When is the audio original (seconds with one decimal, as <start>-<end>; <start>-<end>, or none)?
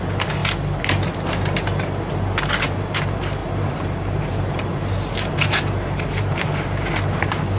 0.0-3.4